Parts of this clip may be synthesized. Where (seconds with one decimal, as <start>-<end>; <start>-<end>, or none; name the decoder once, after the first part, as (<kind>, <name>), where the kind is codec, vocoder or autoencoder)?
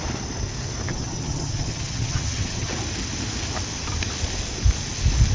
0.9-2.7 (vocoder, HiFi-GAN)